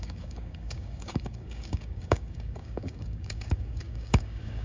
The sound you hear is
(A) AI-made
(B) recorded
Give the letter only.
A